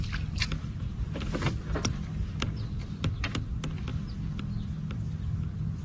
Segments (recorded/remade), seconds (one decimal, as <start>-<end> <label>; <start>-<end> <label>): 0.0-5.8 recorded